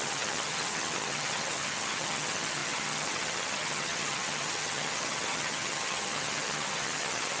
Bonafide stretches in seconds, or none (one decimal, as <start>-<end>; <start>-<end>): none